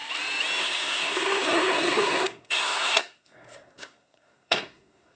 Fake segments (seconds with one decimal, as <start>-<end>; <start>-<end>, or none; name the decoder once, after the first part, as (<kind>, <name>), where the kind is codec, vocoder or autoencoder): 0.6-5.2 (codec, SNAC)